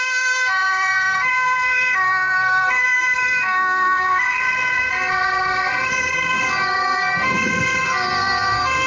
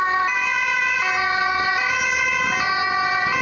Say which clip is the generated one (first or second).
first